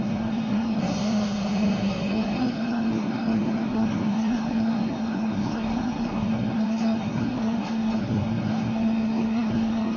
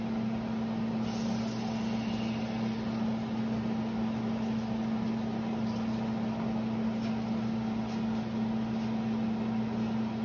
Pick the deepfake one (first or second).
first